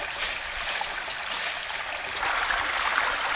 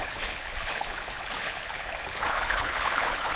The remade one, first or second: second